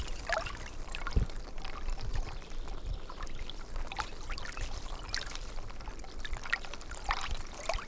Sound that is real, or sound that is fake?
fake